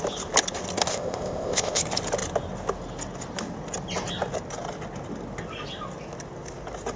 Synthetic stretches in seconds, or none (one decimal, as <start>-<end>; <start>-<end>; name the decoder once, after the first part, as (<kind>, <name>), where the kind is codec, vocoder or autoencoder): 0.9-1.8 (codec, ZipCodec)